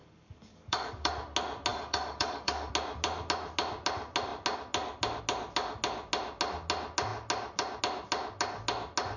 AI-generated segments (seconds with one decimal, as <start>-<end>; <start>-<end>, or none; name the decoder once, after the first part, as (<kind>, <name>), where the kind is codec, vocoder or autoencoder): 0.0-1.1 (codec, DAC); 1.7-2.7